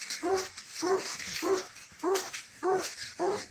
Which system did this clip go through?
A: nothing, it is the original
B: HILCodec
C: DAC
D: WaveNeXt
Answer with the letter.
C